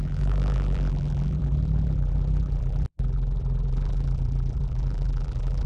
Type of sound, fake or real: fake